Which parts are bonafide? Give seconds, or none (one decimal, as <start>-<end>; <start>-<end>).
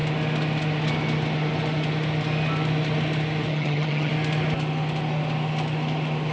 0.0-3.5; 4.1-6.3